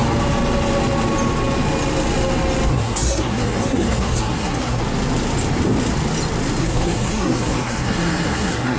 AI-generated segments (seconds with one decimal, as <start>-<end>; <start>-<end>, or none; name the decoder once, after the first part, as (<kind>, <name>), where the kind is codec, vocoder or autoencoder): 2.7-4.8 (codec, SNAC); 6.6-8.8